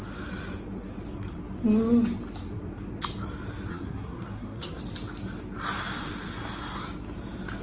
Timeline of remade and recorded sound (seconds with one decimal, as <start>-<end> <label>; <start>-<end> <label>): 0.0-3.7 recorded; 3.7-4.8 remade; 4.8-7.6 recorded